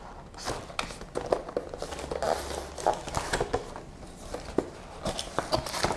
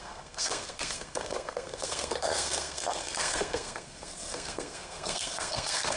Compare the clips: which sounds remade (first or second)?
second